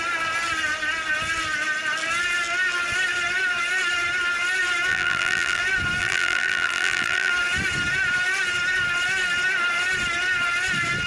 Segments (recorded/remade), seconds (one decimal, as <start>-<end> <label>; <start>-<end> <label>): 0.0-4.9 recorded; 4.9-5.6 remade; 5.6-6.0 recorded; 6.0-7.3 remade; 7.3-11.1 recorded